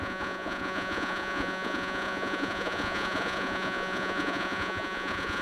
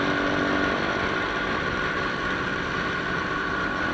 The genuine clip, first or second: second